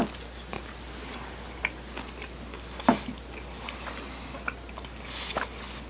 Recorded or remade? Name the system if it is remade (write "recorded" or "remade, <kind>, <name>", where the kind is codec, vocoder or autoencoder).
recorded